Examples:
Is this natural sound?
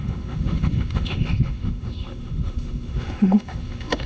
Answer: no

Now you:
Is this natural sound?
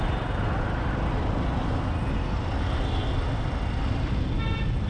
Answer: yes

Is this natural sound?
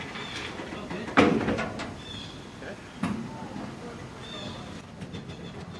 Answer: yes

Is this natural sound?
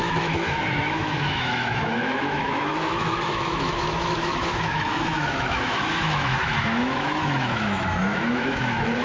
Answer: no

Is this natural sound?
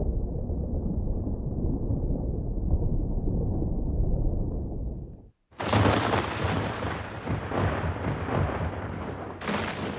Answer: yes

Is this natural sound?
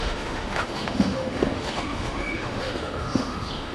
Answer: no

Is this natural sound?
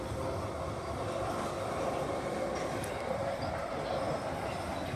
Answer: yes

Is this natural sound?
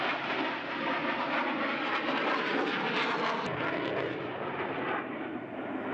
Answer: yes